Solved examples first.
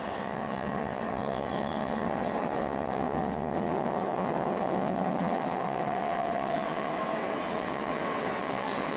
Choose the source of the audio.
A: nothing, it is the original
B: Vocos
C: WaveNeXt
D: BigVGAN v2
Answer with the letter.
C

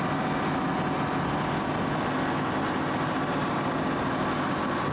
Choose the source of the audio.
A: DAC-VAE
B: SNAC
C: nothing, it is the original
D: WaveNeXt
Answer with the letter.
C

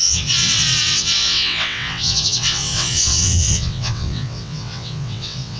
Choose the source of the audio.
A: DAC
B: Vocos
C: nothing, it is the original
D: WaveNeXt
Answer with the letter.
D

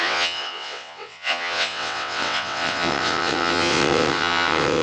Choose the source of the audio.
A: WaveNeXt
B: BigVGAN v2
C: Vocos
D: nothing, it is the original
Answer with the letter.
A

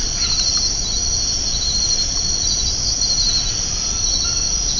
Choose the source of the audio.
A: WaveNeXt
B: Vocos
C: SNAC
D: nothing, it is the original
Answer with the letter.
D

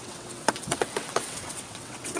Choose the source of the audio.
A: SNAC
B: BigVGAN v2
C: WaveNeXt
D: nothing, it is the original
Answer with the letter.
C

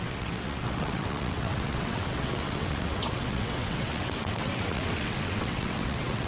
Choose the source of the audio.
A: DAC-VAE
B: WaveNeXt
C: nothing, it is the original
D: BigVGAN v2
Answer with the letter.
B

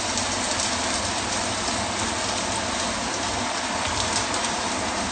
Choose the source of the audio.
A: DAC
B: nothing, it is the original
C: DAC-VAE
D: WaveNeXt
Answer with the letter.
B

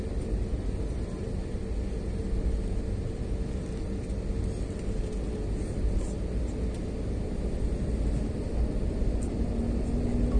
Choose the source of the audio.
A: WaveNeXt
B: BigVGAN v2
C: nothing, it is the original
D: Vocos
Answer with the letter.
C